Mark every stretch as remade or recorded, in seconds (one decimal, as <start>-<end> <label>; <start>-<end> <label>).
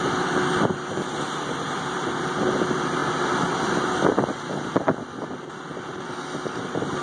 0.0-7.0 recorded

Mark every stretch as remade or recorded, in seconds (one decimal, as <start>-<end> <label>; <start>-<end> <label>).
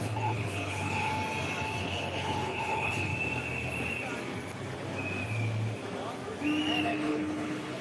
0.0-1.1 remade; 1.1-1.8 recorded; 1.8-3.1 remade; 3.1-6.8 recorded; 6.8-7.8 remade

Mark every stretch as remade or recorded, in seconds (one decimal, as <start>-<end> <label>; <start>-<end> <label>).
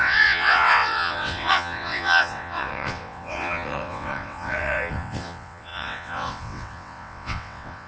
0.0-7.9 remade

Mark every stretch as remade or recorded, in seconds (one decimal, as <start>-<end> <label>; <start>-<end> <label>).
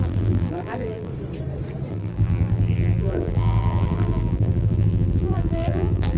0.0-1.1 remade; 1.1-1.9 recorded; 1.9-6.2 remade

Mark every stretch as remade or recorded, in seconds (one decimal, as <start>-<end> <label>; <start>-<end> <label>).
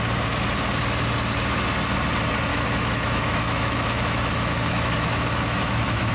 0.0-2.5 recorded; 2.5-6.1 remade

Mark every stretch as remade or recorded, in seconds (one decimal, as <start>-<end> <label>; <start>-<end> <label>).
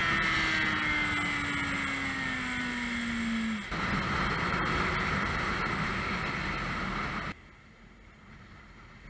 0.0-9.1 recorded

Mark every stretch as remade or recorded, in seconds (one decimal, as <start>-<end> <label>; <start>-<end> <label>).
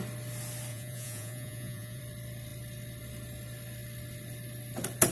0.0-0.7 recorded; 0.7-2.0 remade; 2.0-5.1 recorded